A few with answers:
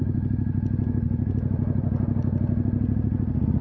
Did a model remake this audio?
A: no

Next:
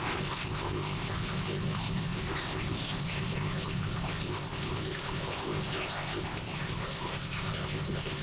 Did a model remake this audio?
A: yes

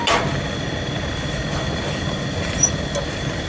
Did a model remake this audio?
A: no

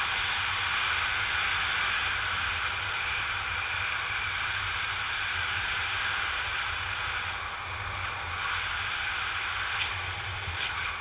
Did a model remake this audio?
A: no